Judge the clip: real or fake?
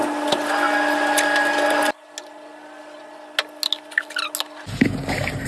real